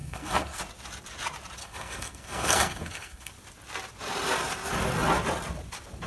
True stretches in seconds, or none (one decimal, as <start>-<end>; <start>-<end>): 0.6-1.6; 3.3-6.1